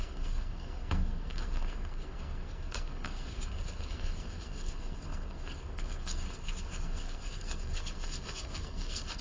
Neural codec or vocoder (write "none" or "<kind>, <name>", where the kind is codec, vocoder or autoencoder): codec, SNAC